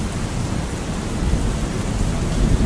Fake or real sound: fake